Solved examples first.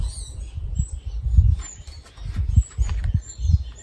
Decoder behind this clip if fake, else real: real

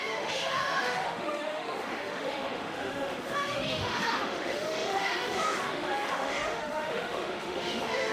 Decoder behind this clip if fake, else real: fake, autoencoder, DAC-VAE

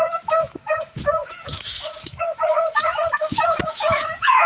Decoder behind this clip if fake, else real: fake, autoencoder, DAC-VAE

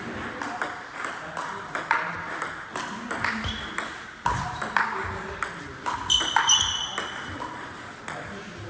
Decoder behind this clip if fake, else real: real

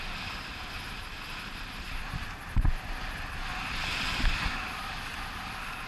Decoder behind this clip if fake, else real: real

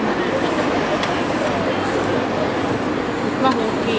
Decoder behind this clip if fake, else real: real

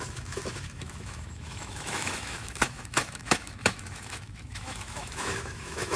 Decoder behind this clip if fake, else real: fake, autoencoder, DAC-VAE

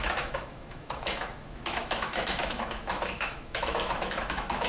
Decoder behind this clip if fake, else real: fake, autoencoder, DAC-VAE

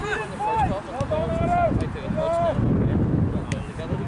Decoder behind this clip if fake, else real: real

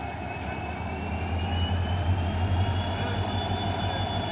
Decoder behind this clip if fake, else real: real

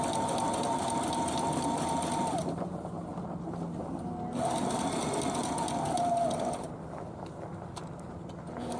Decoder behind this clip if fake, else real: real